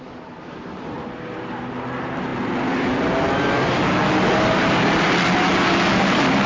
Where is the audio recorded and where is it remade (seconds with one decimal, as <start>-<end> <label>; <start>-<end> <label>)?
0.0-6.5 recorded